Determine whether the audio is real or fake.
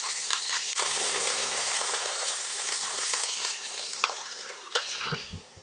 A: fake